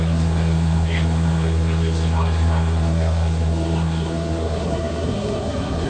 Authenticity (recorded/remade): remade